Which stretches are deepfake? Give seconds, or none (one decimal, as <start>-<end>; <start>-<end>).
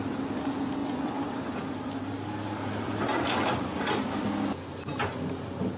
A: 0.8-4.3